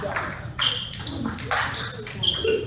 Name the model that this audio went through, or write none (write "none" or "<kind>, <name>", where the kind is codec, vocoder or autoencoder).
none